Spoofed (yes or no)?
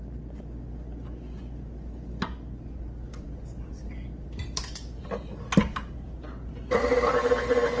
no